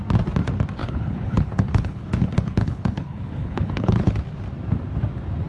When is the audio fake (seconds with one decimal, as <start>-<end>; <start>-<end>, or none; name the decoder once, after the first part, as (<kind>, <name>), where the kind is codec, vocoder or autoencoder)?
0.8-4.1 (codec, HILCodec)